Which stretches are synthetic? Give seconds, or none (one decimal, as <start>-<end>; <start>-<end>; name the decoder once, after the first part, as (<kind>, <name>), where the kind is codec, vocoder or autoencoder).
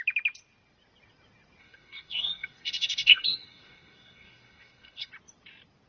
1.6-5.1 (codec, SNAC)